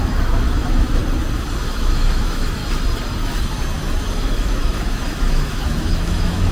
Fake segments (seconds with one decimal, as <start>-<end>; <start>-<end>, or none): 0.0-1.0; 1.6-2.6; 4.1-6.5